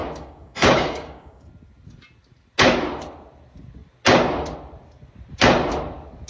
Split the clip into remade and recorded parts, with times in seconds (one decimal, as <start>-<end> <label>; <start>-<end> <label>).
0.0-1.5 remade; 1.5-6.3 recorded